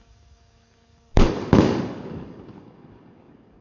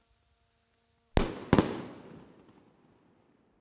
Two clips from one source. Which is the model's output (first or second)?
first